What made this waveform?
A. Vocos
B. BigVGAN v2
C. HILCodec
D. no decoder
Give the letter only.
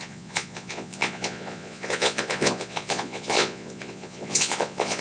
A